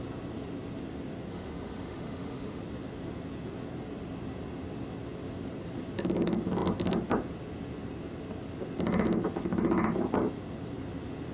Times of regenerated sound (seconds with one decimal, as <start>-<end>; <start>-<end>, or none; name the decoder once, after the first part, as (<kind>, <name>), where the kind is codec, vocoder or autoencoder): 1.3-2.6 (autoencoder, DAC-VAE)